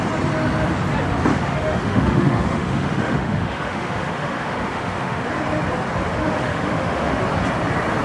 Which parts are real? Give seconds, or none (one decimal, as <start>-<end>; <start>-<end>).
0.0-1.3; 5.3-6.1; 7.2-8.0